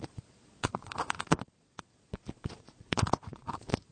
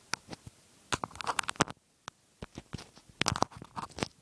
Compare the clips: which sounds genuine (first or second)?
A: second